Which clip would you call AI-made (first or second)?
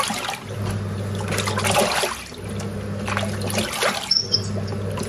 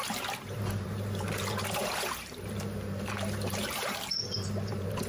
second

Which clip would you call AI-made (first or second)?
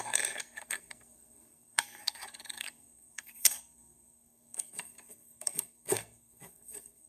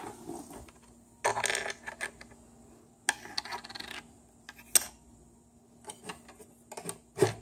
first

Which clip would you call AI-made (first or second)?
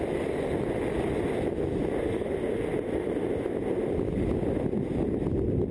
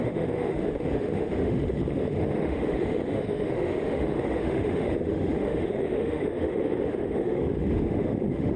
second